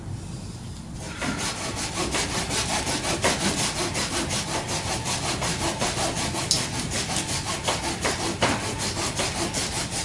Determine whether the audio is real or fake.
real